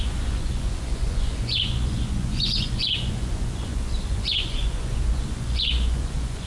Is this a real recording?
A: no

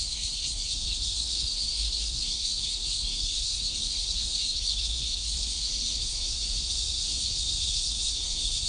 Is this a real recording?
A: no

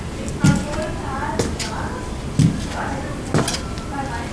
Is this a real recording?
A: yes